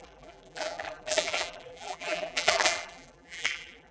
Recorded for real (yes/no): no